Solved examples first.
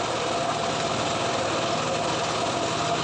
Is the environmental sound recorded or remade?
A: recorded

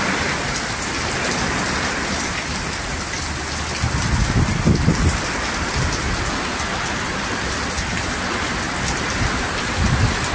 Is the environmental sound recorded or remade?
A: recorded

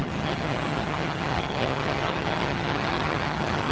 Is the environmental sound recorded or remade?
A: remade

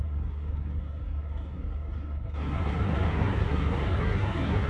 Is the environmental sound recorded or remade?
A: remade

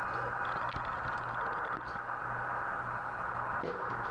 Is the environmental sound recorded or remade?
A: recorded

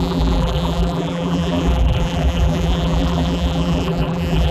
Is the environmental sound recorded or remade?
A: remade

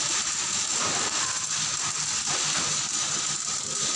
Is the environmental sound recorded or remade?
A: recorded